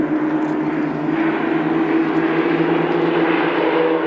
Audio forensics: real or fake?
real